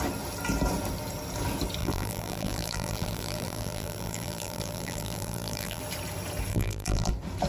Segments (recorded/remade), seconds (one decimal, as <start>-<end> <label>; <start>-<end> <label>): 0.0-1.8 recorded; 1.8-5.8 remade; 5.8-6.5 recorded; 6.5-7.1 remade; 7.1-7.5 recorded